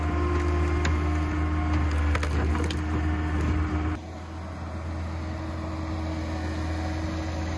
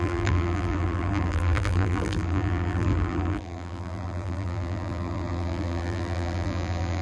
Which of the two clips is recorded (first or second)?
first